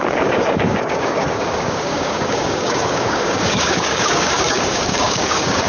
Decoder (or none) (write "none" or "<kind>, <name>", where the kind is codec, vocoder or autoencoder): codec, DAC